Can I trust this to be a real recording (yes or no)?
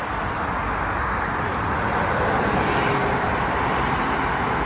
yes